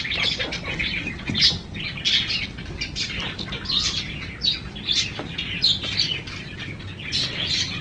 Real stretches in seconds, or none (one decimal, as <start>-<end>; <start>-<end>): 0.0-7.8